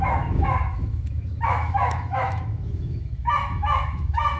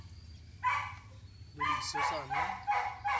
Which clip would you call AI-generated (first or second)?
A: first